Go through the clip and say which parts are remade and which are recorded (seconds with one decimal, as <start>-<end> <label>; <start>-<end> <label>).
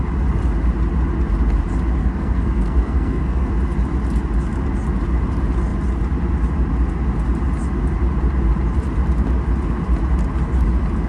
0.0-2.0 recorded; 2.0-3.5 remade; 3.5-11.1 recorded